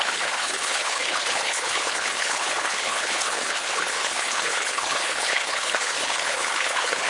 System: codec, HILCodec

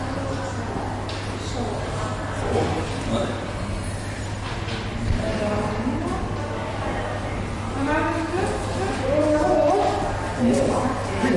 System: none